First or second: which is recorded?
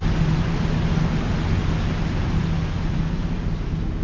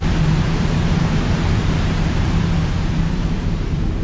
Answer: first